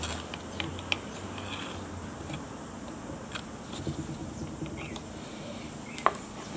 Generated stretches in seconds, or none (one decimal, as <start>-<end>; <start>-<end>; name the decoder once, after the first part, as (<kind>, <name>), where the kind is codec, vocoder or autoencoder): 4.2-5.3 (vocoder, BigVGAN v2); 6.0-6.6